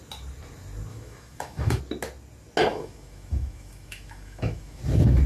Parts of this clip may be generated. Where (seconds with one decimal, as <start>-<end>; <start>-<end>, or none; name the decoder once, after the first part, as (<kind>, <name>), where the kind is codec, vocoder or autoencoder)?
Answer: 0.9-1.8 (autoencoder, DAC-VAE); 2.7-4.8